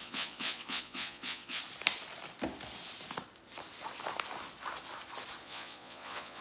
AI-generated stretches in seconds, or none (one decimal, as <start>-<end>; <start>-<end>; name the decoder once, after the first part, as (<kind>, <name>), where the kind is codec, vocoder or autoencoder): 0.0-1.6 (vocoder, Vocos); 5.4-6.4